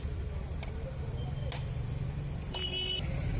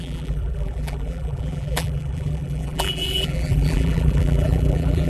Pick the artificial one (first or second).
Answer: second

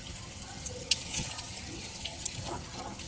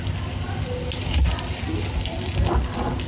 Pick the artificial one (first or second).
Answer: first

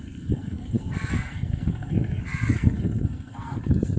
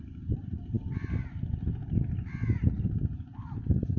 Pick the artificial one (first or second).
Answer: first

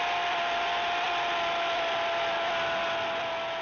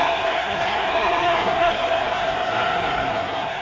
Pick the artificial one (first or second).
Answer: second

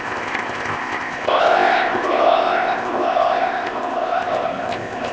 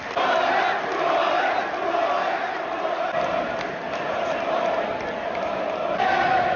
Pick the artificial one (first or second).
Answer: first